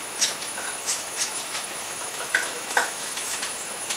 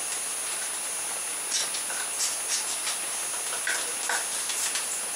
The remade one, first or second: first